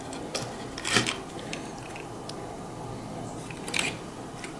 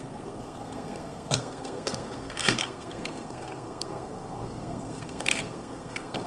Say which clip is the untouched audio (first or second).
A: first